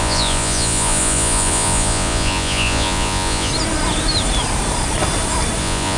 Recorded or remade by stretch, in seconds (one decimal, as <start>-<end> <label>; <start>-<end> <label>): 0.0-3.5 remade; 3.5-5.6 recorded; 5.6-6.0 remade

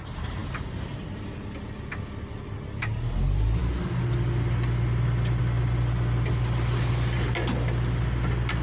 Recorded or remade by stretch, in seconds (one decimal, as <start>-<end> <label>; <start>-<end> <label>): 0.0-8.6 recorded

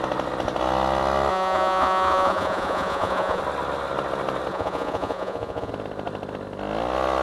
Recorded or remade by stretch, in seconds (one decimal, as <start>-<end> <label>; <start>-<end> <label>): 0.0-1.3 recorded; 1.3-3.4 remade; 3.4-4.5 recorded; 4.5-5.7 remade; 5.7-7.2 recorded